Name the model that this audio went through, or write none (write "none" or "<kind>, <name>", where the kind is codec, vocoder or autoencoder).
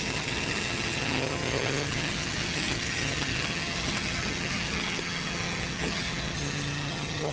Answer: vocoder, HiFi-GAN